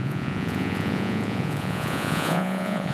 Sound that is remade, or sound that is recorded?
remade